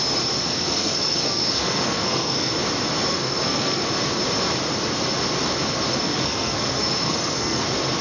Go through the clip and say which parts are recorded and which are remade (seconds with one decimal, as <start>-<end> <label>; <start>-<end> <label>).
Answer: 0.0-0.4 recorded; 0.4-2.5 remade; 2.5-3.1 recorded; 3.1-3.8 remade; 3.8-5.9 recorded; 5.9-7.6 remade; 7.6-8.0 recorded